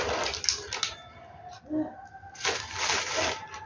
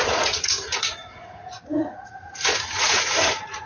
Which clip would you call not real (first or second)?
second